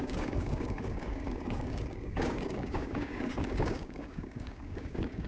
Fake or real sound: fake